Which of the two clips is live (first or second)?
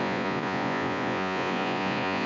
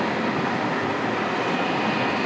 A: second